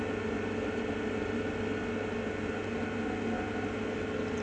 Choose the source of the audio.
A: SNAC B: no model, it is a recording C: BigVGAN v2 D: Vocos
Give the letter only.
B